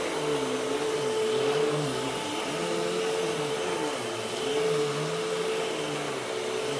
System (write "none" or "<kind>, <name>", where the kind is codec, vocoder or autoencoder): none